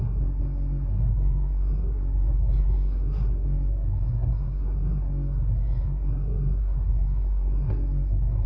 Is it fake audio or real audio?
fake